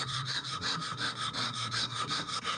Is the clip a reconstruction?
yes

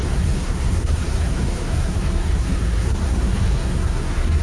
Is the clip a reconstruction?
yes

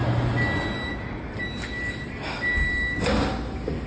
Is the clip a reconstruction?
no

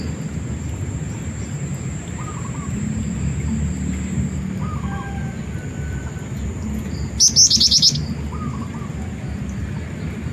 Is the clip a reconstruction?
no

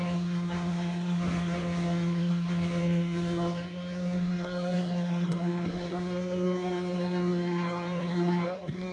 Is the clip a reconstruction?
yes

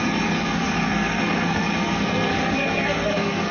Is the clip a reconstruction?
yes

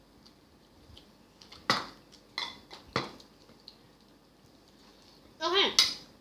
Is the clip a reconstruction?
no